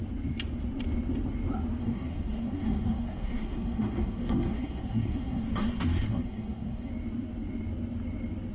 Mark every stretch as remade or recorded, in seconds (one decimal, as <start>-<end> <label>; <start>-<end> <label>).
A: 0.0-1.8 recorded; 1.8-6.9 remade; 6.9-8.5 recorded